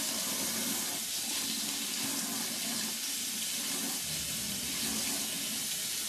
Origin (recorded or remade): recorded